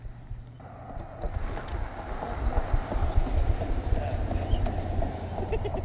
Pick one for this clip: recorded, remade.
recorded